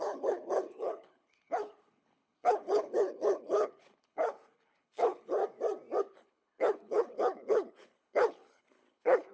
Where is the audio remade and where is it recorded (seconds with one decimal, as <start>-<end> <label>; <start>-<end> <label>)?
0.0-5.4 remade; 5.4-6.0 recorded; 6.0-9.3 remade

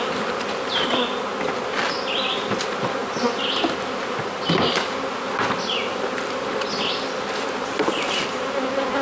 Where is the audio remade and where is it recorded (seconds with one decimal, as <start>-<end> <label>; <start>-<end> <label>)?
0.0-9.0 recorded

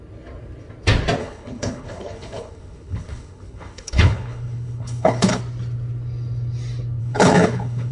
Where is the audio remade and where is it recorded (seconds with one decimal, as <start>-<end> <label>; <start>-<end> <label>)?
0.0-1.2 recorded; 1.2-5.4 remade; 5.4-7.0 recorded; 7.0-7.9 remade

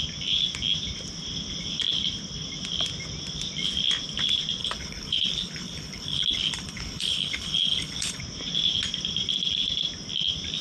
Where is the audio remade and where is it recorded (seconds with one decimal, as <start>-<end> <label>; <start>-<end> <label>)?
0.0-4.6 recorded; 4.6-8.2 remade; 8.2-10.6 recorded